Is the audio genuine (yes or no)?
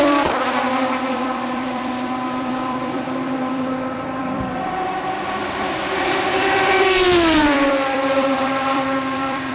no